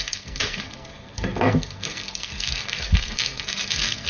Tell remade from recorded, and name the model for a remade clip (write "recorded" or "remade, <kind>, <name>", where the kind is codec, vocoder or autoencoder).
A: remade, codec, SNAC